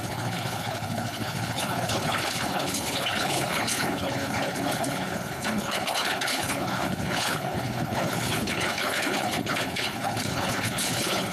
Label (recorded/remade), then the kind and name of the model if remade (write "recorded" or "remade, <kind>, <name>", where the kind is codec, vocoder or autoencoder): remade, codec, HILCodec